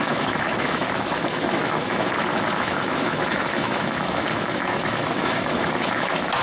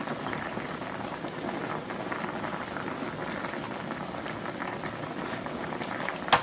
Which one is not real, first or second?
first